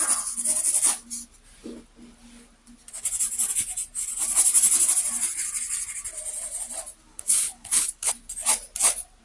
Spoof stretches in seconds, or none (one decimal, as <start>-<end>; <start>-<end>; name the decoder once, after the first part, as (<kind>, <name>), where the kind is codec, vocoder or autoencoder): 7.1-8.1 (codec, HILCodec)